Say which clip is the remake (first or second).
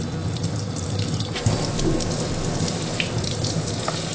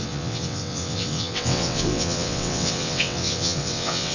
second